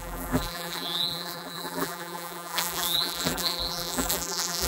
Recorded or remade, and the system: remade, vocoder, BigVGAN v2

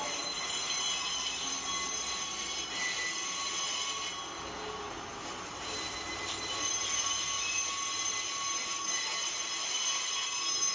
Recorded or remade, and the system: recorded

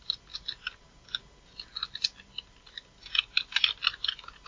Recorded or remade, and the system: recorded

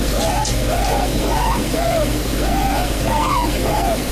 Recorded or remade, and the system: remade, codec, SNAC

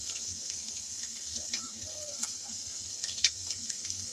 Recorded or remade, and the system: remade, codec, SNAC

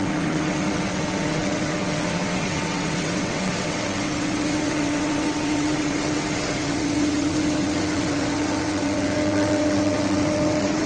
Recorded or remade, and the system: remade, vocoder, WaveNeXt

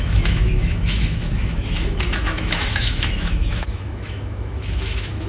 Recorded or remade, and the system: remade, autoencoder, DAC-VAE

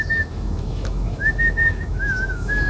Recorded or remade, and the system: remade, autoencoder, DAC-VAE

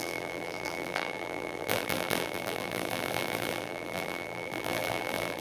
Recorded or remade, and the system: remade, vocoder, BigVGAN v2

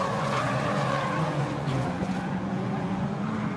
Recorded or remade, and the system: remade, vocoder, Vocos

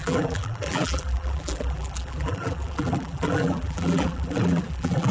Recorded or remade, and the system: remade, vocoder, BigVGAN v2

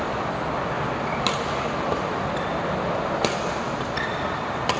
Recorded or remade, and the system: recorded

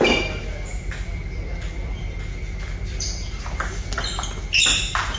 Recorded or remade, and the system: recorded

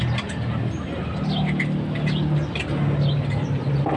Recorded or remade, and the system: recorded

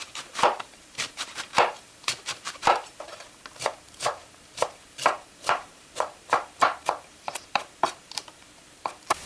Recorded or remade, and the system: remade, vocoder, BigVGAN v2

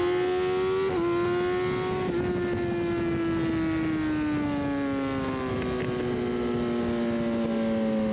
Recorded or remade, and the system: recorded